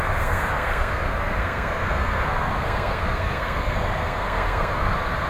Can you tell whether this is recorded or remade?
remade